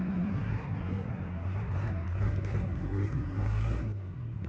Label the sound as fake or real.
fake